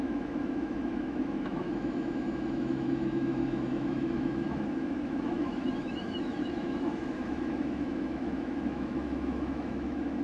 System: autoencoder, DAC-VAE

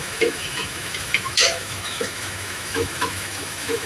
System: autoencoder, DAC-VAE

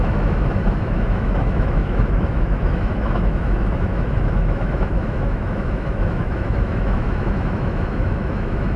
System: autoencoder, DAC-VAE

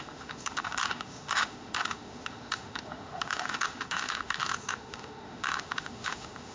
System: autoencoder, DAC-VAE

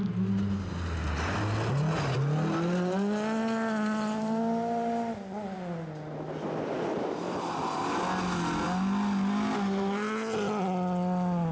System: none